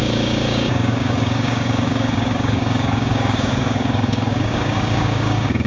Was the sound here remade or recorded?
remade